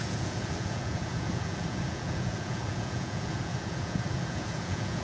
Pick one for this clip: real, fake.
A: fake